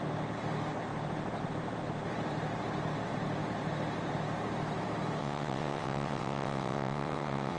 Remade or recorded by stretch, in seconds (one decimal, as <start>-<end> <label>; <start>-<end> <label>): 0.0-5.2 recorded; 5.2-7.6 remade